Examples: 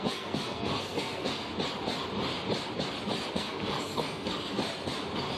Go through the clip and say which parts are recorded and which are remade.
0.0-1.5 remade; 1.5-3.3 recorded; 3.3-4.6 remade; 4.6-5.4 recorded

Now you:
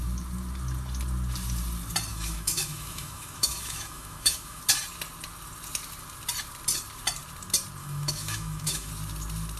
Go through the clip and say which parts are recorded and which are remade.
0.0-2.1 recorded; 2.1-4.6 remade; 4.6-7.8 recorded; 7.8-8.9 remade; 8.9-9.6 recorded